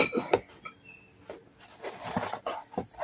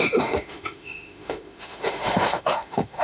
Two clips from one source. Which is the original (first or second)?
first